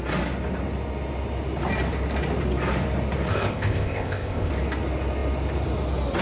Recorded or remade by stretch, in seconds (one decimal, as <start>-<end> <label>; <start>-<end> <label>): 0.0-3.3 recorded; 3.3-4.5 remade; 4.5-6.2 recorded